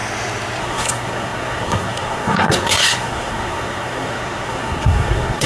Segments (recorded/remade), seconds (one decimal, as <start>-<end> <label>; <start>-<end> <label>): 0.0-0.6 recorded; 0.6-5.5 remade